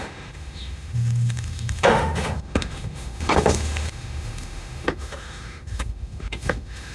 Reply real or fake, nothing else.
fake